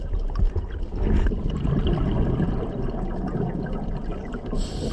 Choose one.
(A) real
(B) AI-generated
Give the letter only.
A